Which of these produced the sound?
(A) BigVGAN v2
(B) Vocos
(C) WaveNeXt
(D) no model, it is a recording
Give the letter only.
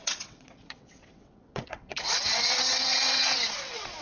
C